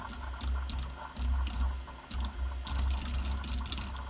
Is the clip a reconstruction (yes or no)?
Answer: no